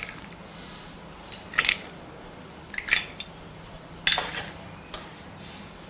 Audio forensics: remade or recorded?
recorded